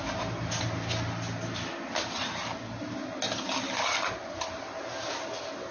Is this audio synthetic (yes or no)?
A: no